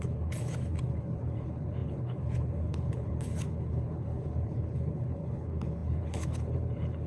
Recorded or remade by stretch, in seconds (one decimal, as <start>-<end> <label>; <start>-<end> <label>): 0.0-7.1 remade